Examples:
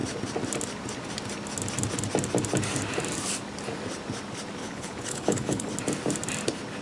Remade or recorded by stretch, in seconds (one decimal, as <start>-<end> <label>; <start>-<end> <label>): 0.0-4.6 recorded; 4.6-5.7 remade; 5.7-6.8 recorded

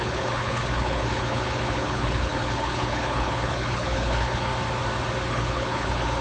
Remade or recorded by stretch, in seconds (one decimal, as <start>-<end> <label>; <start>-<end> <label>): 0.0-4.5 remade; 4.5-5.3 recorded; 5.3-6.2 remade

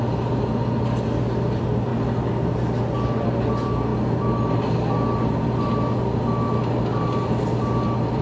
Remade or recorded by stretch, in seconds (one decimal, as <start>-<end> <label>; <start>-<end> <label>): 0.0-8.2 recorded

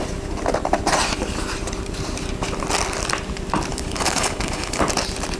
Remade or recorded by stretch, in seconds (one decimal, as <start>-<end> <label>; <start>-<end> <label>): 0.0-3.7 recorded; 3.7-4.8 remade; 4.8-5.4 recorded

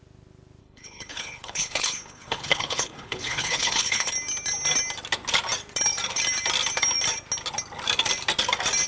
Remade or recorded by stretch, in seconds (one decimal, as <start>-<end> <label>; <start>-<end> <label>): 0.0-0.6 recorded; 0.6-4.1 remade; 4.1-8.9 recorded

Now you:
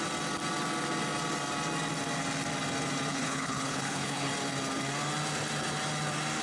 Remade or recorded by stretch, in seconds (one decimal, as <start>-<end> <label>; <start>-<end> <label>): 0.0-3.1 recorded; 3.1-4.3 remade; 4.3-6.4 recorded

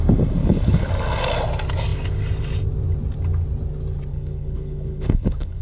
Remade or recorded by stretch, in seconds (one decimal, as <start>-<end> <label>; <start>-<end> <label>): 0.0-0.4 recorded; 0.4-0.9 remade; 0.9-4.1 recorded; 4.1-5.6 remade

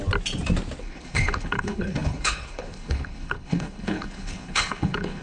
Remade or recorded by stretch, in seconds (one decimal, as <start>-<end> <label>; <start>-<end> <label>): 0.0-0.8 recorded; 0.8-5.2 remade